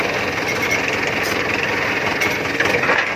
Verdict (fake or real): real